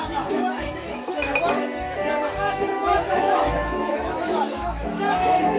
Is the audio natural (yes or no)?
no